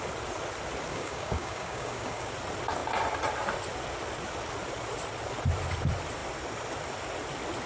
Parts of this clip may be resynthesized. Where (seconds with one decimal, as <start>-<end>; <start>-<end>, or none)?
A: 0.9-2.3